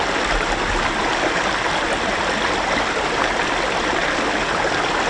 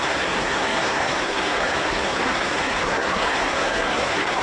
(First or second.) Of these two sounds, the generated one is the second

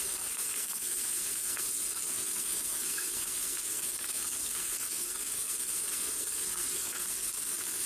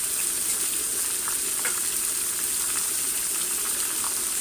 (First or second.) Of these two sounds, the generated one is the first